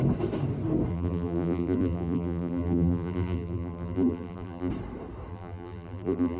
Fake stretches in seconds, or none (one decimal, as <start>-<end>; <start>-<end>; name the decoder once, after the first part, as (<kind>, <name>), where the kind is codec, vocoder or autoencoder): 0.9-4.7 (vocoder, BigVGAN v2); 5.3-6.4